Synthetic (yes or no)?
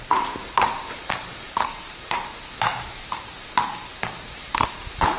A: yes